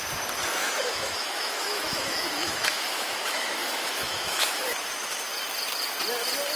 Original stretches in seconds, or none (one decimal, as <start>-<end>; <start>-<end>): 0.0-0.6; 4.6-6.6